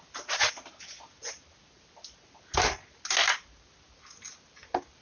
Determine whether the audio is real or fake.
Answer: real